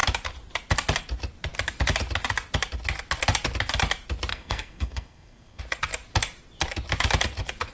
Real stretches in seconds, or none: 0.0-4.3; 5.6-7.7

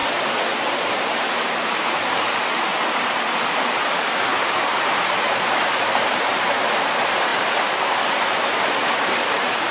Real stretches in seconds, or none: 0.0-0.8

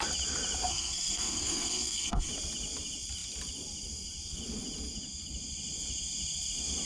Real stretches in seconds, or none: 0.0-0.7; 2.3-6.9

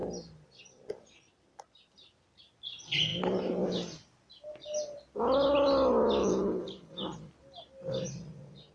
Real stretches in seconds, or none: 0.0-6.2; 6.9-8.7